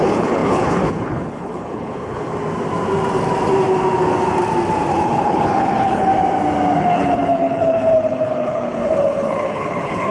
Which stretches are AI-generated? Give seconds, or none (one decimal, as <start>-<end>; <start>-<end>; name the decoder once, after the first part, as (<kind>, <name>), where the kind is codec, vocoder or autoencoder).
0.0-2.3 (codec, HILCodec); 4.9-6.1; 6.8-10.1